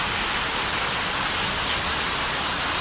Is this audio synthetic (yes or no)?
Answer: no